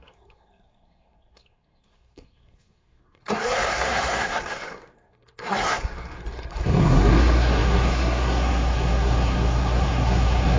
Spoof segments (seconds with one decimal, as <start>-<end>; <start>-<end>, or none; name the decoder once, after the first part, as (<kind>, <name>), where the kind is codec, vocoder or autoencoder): 0.0-10.6 (codec, SNAC)